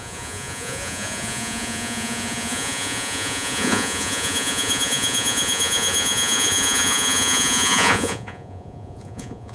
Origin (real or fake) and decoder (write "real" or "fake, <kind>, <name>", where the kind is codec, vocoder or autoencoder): fake, vocoder, Vocos